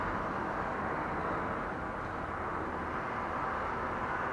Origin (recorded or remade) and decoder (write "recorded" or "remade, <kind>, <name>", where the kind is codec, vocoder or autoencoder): recorded